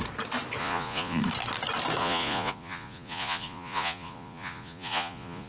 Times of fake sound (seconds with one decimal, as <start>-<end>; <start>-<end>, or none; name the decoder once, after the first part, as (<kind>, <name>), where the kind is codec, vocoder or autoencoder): 0.6-1.2 (vocoder, Vocos); 2.0-5.5